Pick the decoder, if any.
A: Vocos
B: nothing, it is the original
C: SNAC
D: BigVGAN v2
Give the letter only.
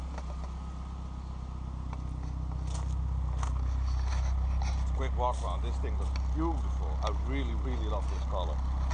B